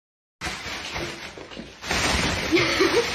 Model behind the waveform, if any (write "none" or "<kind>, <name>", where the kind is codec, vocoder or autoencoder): none